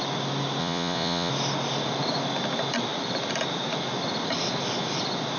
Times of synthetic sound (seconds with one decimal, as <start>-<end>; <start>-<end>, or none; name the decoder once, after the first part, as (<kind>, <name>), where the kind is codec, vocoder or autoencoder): 0.6-1.3 (vocoder, Vocos)